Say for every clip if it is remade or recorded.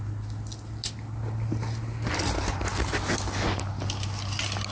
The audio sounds recorded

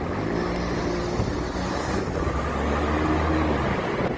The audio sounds recorded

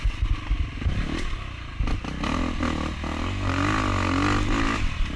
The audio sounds recorded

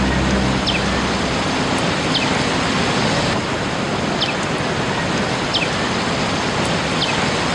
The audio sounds recorded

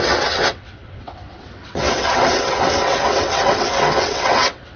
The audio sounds remade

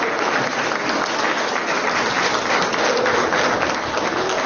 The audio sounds recorded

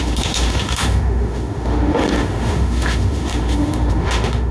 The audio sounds remade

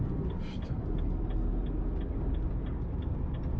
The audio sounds recorded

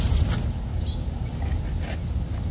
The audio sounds recorded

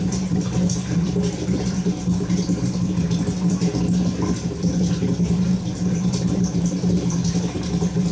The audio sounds recorded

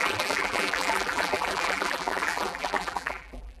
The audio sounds remade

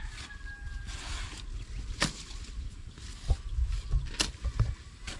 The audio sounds recorded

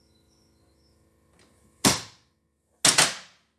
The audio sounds recorded